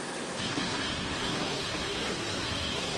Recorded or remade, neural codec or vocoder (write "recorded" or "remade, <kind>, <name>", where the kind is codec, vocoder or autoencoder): remade, codec, SNAC